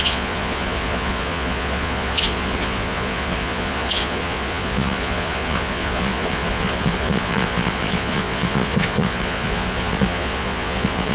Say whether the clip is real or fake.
fake